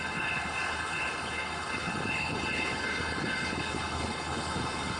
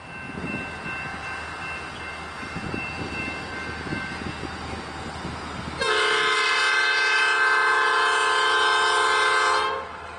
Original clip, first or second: second